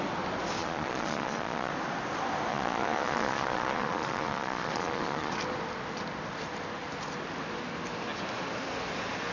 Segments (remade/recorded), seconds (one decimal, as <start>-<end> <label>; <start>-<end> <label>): 0.0-0.6 recorded; 0.6-1.7 remade; 1.7-2.5 recorded; 2.5-5.3 remade; 5.3-9.3 recorded